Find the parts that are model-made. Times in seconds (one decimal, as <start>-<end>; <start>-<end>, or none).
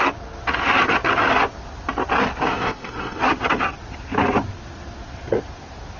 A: 2.5-3.2